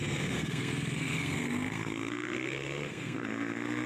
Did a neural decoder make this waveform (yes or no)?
yes